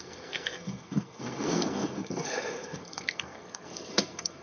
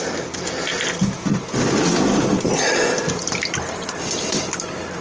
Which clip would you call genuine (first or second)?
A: second